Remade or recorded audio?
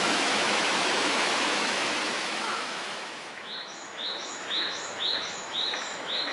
remade